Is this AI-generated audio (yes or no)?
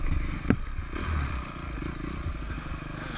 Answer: no